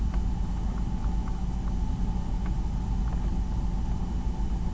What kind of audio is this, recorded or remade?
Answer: recorded